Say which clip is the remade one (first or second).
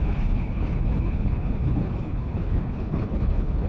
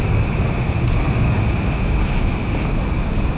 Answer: first